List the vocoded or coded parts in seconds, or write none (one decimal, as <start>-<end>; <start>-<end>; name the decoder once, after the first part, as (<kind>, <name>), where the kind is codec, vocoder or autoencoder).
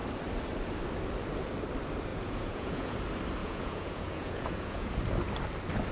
2.1-3.0 (vocoder, Vocos); 3.4-5.0